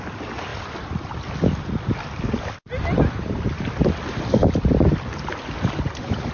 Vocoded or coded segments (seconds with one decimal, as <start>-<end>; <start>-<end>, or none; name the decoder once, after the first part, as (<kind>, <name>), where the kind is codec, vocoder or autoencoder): none

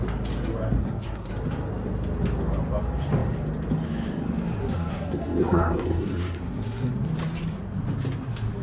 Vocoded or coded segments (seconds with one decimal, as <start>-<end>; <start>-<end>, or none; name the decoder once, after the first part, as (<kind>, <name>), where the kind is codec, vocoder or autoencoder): 0.8-1.3 (codec, SNAC); 4.6-6.9

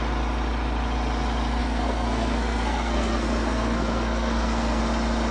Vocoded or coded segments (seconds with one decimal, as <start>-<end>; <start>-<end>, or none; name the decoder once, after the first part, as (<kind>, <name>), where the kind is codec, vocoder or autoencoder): 1.6-4.8 (codec, SNAC)

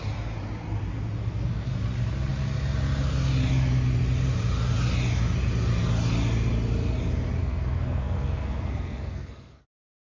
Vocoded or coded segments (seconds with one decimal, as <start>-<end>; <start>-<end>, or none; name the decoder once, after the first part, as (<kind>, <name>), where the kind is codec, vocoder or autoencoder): 1.2-1.7 (codec, SNAC); 7.4-9.6

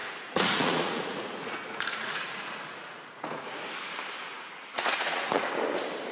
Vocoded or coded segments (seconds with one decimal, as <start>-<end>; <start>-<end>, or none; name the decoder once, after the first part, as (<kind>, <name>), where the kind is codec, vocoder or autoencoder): 0.0-3.7 (vocoder, Vocos); 4.3-5.5

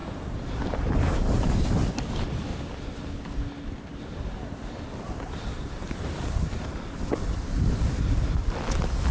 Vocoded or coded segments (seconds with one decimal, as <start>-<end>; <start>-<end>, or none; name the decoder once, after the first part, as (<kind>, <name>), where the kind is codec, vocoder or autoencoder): 0.0-2.5 (vocoder, BigVGAN v2); 4.0-9.1